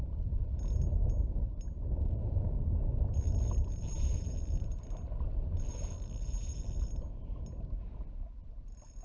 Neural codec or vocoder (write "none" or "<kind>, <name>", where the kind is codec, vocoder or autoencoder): none